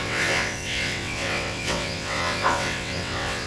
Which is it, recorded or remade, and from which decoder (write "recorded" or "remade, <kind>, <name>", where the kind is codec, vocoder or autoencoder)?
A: remade, vocoder, WaveNeXt